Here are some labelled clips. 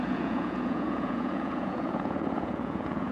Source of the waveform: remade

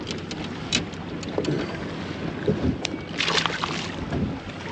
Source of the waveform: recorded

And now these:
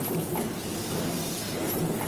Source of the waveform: recorded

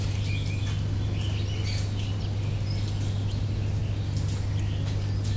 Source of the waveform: recorded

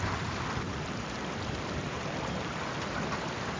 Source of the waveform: recorded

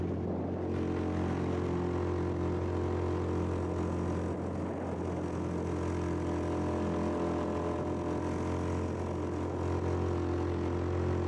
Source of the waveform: recorded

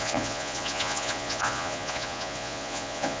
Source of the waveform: remade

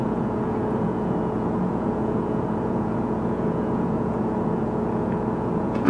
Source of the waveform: remade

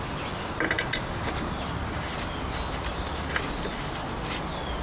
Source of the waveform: recorded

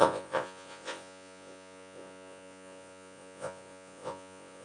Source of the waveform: remade